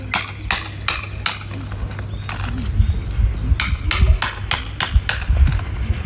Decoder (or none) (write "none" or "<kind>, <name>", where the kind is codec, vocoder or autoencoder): none